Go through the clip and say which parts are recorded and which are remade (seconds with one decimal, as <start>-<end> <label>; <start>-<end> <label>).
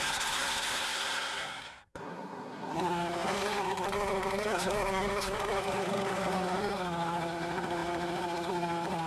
0.0-9.1 remade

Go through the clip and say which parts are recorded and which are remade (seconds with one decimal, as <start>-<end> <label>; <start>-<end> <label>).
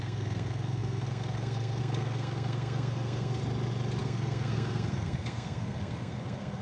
0.0-3.4 remade; 3.4-4.0 recorded; 4.0-6.6 remade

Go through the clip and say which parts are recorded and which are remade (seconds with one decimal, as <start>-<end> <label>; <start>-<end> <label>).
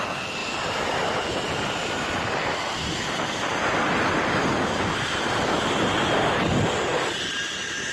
0.0-0.4 recorded; 0.4-1.1 remade; 1.1-1.8 recorded; 1.8-5.0 remade; 5.0-7.9 recorded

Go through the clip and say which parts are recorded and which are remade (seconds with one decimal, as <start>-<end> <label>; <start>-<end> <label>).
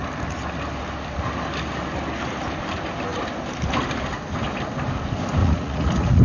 0.0-5.4 recorded; 5.4-6.2 remade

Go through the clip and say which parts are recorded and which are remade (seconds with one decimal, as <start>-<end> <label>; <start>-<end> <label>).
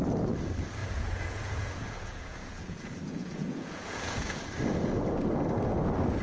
0.0-0.8 recorded; 0.8-4.4 remade; 4.4-6.2 recorded